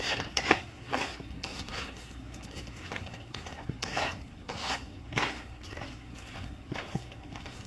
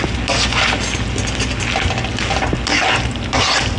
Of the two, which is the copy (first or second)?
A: first